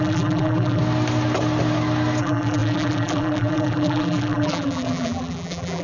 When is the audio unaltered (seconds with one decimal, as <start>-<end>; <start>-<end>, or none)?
0.8-2.2